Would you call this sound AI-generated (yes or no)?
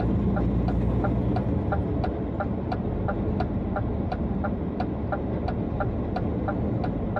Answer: no